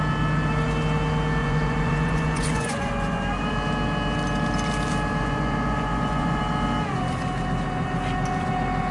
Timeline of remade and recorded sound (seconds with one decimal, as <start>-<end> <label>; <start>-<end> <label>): 0.0-1.4 recorded; 1.4-3.2 remade; 3.2-5.2 recorded; 5.2-6.4 remade; 6.4-8.9 recorded